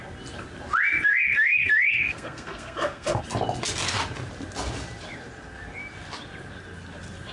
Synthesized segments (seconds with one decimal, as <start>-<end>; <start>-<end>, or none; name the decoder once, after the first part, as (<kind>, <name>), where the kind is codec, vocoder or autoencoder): 1.1-3.2 (codec, SNAC)